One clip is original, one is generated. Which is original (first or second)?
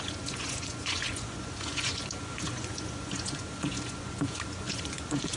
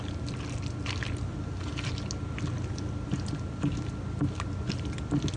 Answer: second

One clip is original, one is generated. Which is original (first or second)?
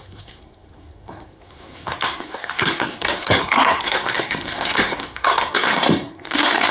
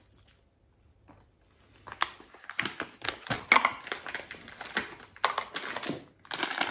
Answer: second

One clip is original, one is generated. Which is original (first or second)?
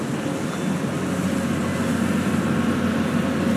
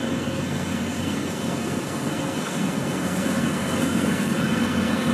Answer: first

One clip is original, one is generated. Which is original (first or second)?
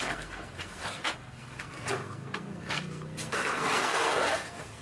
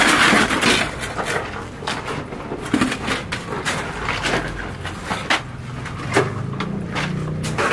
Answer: second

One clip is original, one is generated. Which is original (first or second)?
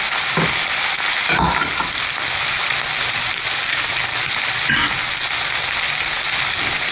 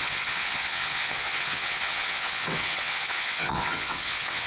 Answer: first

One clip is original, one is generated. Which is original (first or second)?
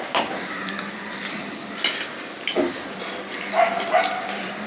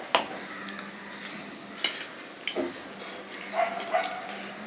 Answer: second